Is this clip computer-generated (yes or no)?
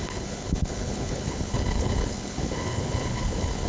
yes